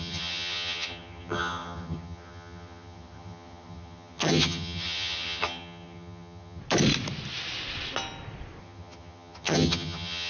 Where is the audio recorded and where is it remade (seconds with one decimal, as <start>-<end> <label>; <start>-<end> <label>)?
0.0-6.6 remade; 6.6-8.6 recorded; 8.6-10.3 remade